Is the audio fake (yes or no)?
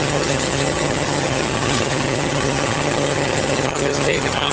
yes